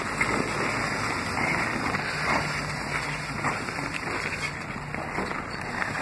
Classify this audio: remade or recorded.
recorded